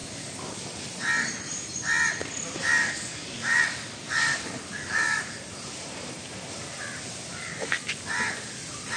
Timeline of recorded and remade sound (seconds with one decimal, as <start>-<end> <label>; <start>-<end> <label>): 0.0-0.6 remade; 0.6-2.7 recorded; 2.7-5.4 remade; 5.4-7.3 recorded; 7.3-7.9 remade; 7.9-9.0 recorded